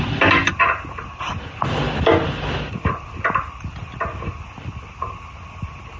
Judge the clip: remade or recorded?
recorded